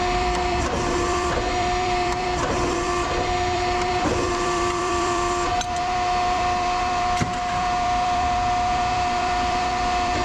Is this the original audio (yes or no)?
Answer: no